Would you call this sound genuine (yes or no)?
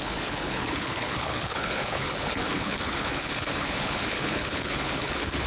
no